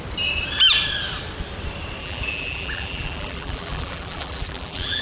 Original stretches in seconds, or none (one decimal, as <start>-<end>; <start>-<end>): 0.0-2.0